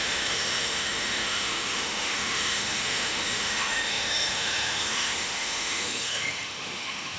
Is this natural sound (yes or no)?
no